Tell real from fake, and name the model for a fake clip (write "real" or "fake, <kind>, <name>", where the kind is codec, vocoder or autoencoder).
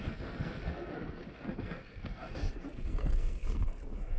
fake, codec, SNAC